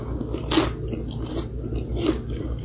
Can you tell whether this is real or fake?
real